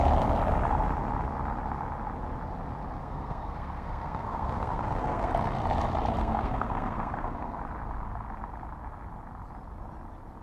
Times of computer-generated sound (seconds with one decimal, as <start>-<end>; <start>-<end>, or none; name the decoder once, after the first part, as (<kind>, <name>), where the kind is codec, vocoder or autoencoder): 3.0-5.3 (codec, SNAC); 6.2-7.6